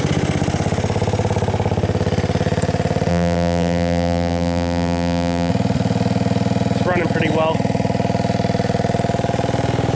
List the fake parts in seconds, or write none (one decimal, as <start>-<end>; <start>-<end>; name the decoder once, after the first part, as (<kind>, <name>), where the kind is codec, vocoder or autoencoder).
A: 3.1-5.5 (vocoder, BigVGAN v2)